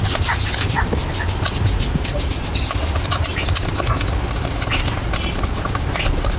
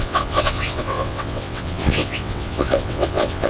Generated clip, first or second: second